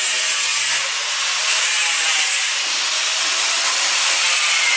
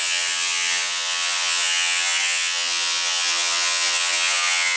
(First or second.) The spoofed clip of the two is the second